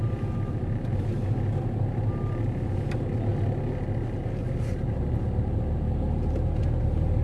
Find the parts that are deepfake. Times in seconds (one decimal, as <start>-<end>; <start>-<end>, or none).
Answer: 0.0-1.1; 4.6-5.2; 6.8-7.2

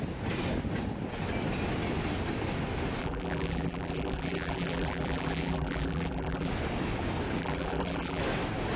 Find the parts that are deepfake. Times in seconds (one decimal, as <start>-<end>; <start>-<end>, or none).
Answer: 3.0-6.5; 7.4-8.2